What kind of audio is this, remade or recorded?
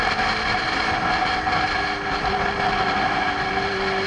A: recorded